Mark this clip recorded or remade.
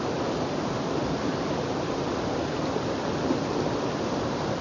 recorded